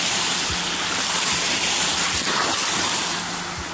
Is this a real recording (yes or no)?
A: yes